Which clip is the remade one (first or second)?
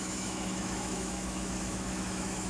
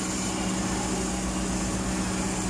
first